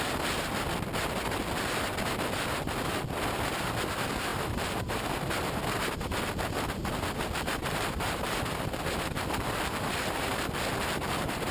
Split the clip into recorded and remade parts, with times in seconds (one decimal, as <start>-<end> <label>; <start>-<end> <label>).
0.0-4.3 recorded; 4.3-5.6 remade; 5.6-7.6 recorded; 7.6-11.5 remade